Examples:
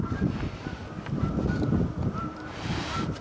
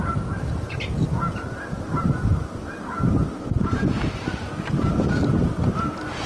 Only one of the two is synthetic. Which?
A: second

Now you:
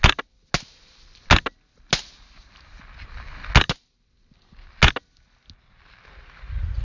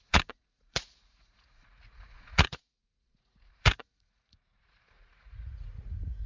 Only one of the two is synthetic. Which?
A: second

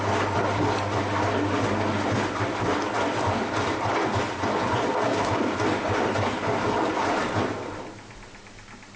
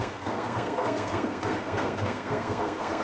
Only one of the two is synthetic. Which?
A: second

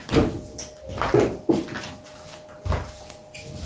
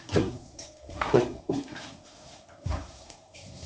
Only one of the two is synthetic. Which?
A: second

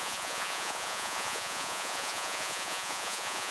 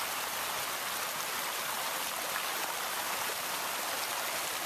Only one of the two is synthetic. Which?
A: first